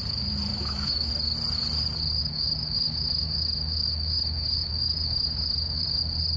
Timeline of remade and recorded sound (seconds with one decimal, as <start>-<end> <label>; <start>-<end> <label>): 0.0-0.5 recorded; 0.5-1.1 remade; 1.1-2.2 recorded; 2.2-6.0 remade; 6.0-6.4 recorded